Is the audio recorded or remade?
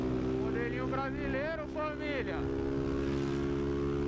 recorded